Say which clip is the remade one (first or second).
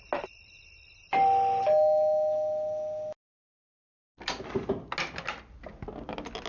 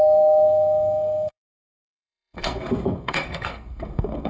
second